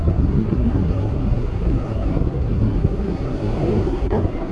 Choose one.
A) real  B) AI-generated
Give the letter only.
B